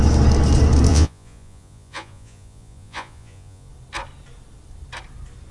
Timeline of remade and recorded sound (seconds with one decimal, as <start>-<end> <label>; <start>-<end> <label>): 0.0-0.9 recorded; 0.9-3.7 remade; 3.7-5.5 recorded